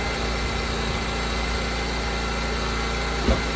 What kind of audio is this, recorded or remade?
recorded